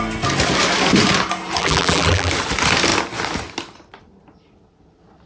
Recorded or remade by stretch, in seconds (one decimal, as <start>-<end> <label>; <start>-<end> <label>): 0.0-1.6 recorded; 1.6-2.3 remade; 2.3-5.3 recorded